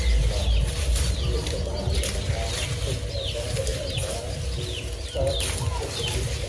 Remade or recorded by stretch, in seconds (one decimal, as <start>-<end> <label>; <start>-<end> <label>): 0.0-3.7 recorded; 3.7-4.4 remade; 4.4-6.5 recorded

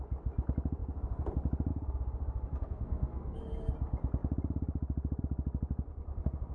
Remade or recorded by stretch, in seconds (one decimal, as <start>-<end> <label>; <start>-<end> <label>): 0.0-2.5 recorded; 2.5-3.4 remade; 3.4-6.5 recorded